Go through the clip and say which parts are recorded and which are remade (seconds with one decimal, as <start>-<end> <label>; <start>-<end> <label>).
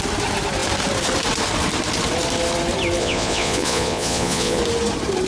0.0-3.0 recorded; 3.0-4.6 remade; 4.6-5.3 recorded